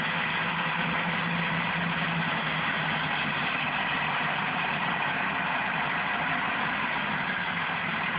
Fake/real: real